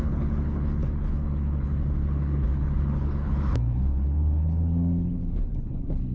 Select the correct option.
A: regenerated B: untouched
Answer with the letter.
A